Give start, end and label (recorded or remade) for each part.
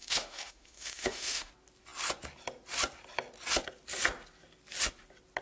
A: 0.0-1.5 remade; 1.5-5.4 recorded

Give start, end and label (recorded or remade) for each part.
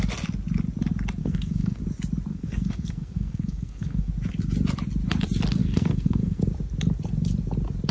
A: 0.0-1.2 recorded; 1.2-1.8 remade; 1.8-2.3 recorded; 2.3-4.1 remade; 4.1-5.6 recorded; 5.6-6.4 remade; 6.4-7.9 recorded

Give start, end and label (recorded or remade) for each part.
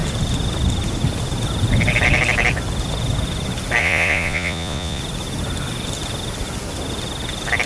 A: 0.0-3.8 recorded; 3.8-5.0 remade; 5.0-7.7 recorded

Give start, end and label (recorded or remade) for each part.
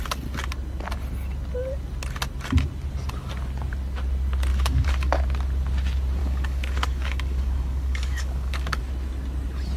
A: 0.0-4.5 recorded; 4.5-5.2 remade; 5.2-6.2 recorded; 6.2-8.8 remade; 8.8-9.8 recorded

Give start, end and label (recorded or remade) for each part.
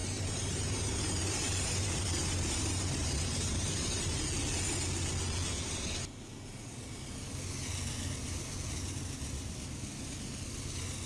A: 0.0-4.2 remade; 4.2-11.1 recorded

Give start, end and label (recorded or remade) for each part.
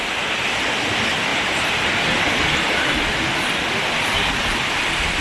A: 0.0-5.2 recorded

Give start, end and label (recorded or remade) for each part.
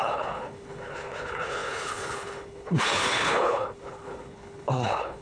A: 0.0-5.2 remade